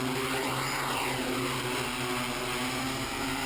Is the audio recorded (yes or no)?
yes